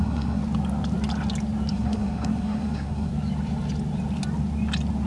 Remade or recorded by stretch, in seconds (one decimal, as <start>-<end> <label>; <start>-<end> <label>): 0.0-0.4 remade; 0.4-1.7 recorded; 1.7-3.1 remade; 3.1-5.1 recorded